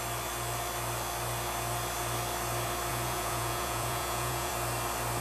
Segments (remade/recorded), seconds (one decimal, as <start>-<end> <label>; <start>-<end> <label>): 0.0-2.9 recorded; 2.9-4.5 remade; 4.5-5.2 recorded